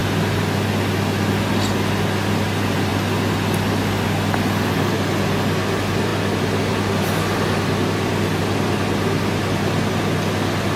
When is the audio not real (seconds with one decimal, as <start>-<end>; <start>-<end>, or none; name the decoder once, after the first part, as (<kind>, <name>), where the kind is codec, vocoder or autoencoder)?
none